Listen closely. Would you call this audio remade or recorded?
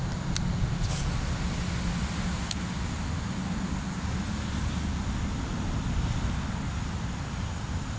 recorded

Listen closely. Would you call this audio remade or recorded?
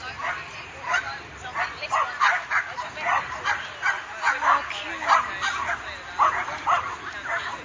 recorded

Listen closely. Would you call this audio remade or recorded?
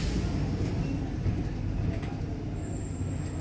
recorded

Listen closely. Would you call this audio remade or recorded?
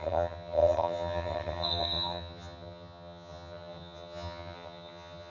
remade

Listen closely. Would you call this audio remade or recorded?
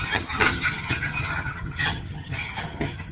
remade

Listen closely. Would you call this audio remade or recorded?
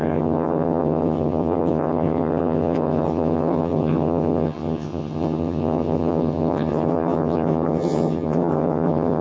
remade